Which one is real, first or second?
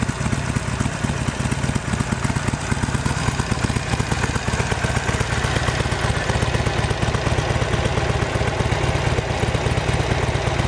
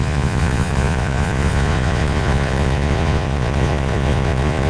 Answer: first